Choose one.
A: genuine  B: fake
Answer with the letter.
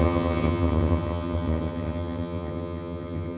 B